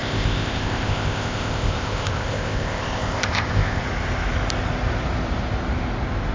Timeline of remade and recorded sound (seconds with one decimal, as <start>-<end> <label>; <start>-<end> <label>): 0.0-3.8 remade; 3.8-6.3 recorded